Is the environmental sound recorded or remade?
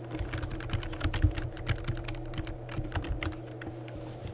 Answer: recorded